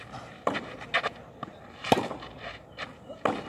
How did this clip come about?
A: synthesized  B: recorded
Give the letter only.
A